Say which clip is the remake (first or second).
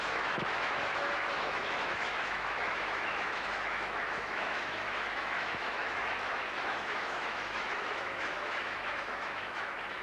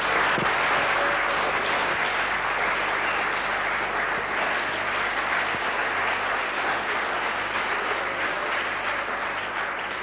first